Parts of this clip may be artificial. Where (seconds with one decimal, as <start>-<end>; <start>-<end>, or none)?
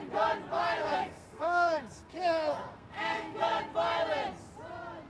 0.8-3.6